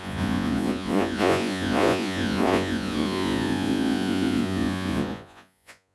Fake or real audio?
fake